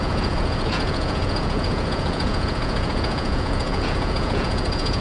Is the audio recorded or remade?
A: remade